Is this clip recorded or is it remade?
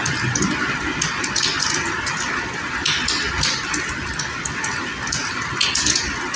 recorded